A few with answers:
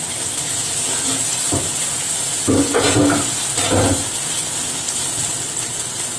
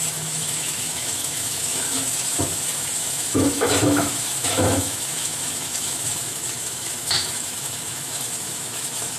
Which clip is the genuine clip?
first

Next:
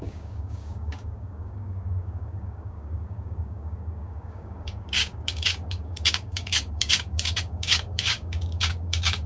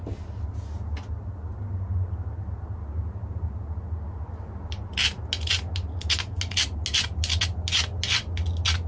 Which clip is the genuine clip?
second